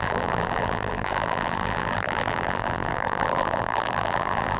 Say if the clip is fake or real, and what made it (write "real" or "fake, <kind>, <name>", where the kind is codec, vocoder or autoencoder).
fake, vocoder, BigVGAN v2